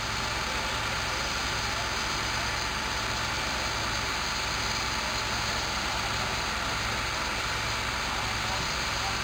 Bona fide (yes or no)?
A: yes